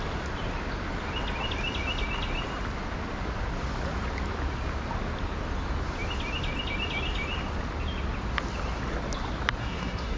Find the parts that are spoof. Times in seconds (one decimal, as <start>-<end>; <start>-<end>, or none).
9.6-10.2